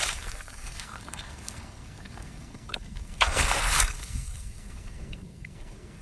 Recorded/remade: remade